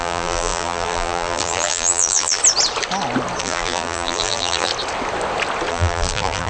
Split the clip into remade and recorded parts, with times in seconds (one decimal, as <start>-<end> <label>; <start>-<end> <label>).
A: 0.0-2.4 remade; 2.4-3.4 recorded; 3.4-4.7 remade; 4.7-5.7 recorded; 5.7-6.5 remade